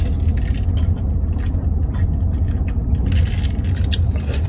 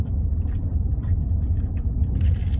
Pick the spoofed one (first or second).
second